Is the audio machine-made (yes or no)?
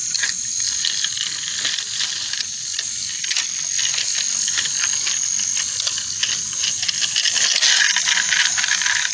no